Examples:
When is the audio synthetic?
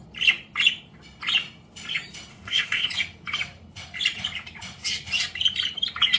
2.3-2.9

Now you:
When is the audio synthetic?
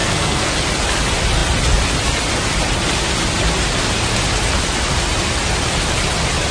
0.0-0.5